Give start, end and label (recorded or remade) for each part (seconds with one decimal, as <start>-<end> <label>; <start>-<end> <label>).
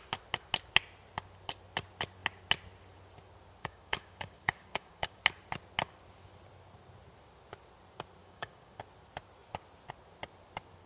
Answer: 0.0-3.6 recorded; 3.6-5.2 remade; 5.2-8.2 recorded; 8.2-8.8 remade; 8.8-10.9 recorded